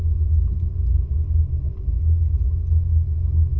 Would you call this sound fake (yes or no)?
no